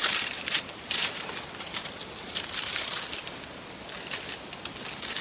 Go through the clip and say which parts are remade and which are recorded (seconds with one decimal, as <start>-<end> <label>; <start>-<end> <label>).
0.0-1.2 remade; 1.2-2.0 recorded; 2.0-3.0 remade; 3.0-5.2 recorded